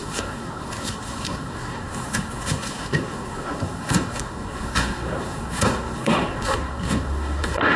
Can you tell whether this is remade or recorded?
remade